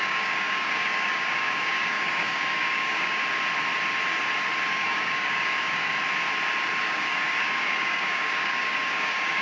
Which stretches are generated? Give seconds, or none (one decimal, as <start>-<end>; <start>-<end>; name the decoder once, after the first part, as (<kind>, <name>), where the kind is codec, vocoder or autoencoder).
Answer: 0.0-3.2 (codec, DAC); 4.7-5.9; 6.8-9.4